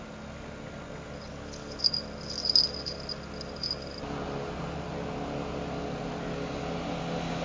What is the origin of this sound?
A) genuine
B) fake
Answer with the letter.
A